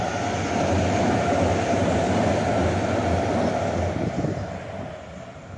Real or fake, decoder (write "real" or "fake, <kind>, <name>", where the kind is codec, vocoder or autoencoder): real